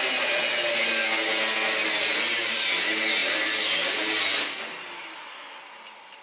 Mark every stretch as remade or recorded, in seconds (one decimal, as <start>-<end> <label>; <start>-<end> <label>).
0.0-6.2 recorded